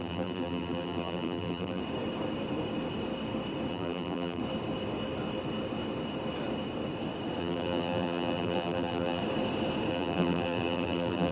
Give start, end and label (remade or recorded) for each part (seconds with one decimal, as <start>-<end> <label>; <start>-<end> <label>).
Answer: 0.0-1.8 remade; 1.8-3.7 recorded; 3.7-4.4 remade; 4.4-7.4 recorded; 7.4-9.2 remade; 9.2-9.9 recorded; 9.9-11.3 remade